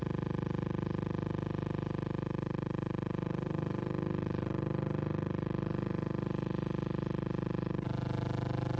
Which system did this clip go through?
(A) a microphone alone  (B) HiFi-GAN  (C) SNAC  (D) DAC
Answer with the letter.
A